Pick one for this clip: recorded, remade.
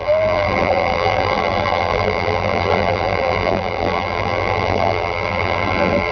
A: remade